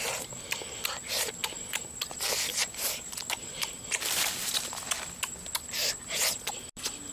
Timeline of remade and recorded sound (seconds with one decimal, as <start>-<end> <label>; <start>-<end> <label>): 0.0-1.4 recorded; 1.4-2.0 remade; 2.0-2.6 recorded; 2.6-4.5 remade; 4.5-7.1 recorded

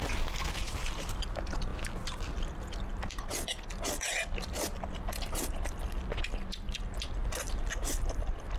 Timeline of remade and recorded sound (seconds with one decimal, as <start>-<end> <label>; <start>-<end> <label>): 0.0-8.6 recorded

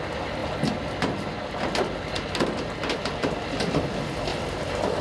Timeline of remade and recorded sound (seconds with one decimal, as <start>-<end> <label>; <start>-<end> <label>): 0.0-5.0 recorded

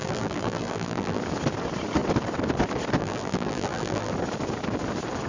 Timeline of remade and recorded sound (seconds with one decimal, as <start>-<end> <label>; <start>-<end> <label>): 0.0-1.2 remade; 1.2-3.0 recorded; 3.0-4.1 remade; 4.1-5.3 recorded

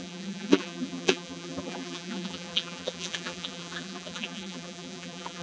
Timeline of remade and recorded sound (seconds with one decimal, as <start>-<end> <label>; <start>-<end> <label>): 0.0-5.4 remade

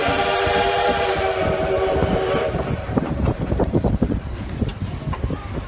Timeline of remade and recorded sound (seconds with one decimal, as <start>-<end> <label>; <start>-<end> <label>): 0.0-5.7 remade

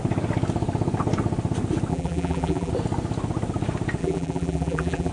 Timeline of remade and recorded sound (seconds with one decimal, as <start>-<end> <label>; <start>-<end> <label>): 0.0-1.9 recorded; 1.9-2.7 remade; 2.7-4.0 recorded; 4.0-5.1 remade

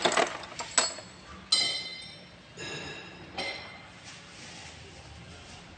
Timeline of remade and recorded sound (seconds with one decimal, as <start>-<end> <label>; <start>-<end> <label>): 0.0-5.8 recorded